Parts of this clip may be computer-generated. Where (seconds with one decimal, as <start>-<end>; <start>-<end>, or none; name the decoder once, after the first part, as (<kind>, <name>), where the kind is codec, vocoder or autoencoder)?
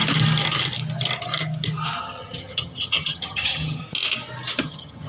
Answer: 2.0-3.8 (vocoder, HiFi-GAN); 4.6-5.1